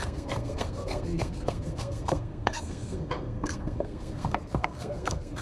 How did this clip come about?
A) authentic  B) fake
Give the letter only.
B